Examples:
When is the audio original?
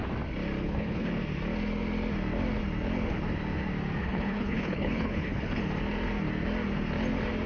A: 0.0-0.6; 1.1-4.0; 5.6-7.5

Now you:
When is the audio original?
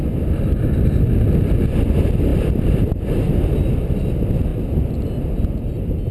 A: 0.0-6.1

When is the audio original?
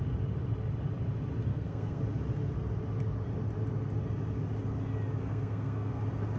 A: 0.0-1.5; 2.0-5.2; 6.0-6.4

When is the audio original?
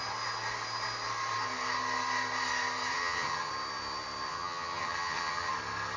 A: 0.0-2.9; 3.5-4.3; 5.5-6.0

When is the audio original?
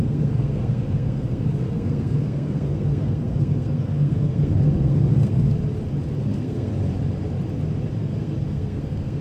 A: 5.5-6.2; 6.7-8.0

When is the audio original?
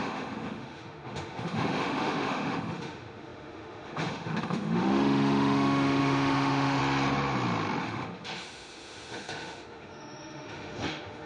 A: 6.8-7.8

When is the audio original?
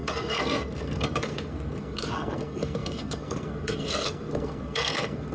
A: none